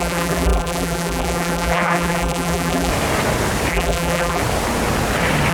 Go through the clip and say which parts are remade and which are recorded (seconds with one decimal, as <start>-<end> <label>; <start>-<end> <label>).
0.0-2.9 remade; 2.9-3.7 recorded; 3.7-4.4 remade; 4.4-5.5 recorded